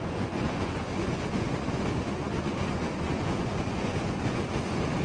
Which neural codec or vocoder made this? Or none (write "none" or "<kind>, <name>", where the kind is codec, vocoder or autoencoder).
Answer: vocoder, Vocos